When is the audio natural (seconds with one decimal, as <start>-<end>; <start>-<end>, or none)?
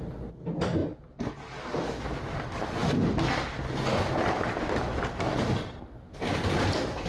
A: 0.0-7.1